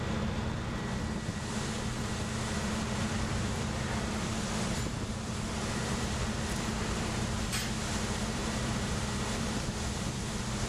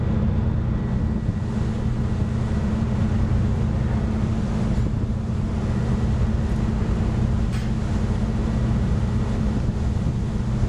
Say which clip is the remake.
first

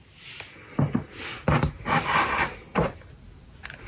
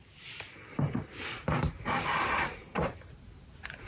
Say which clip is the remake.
second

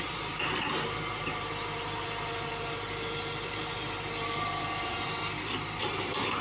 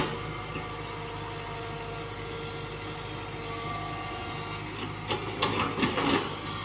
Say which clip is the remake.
first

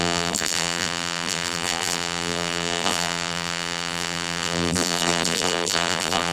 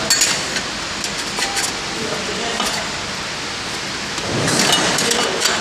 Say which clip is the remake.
first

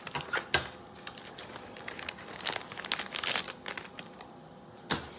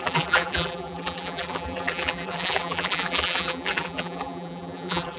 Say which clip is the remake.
second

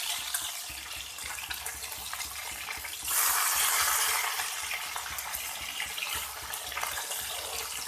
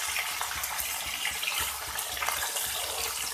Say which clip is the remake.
second